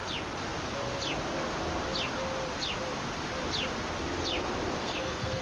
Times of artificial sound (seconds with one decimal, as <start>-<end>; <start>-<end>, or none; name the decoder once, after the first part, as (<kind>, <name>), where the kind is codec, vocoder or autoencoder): 4.8-5.4 (codec, SNAC)